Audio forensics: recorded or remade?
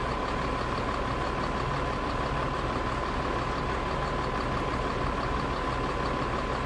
recorded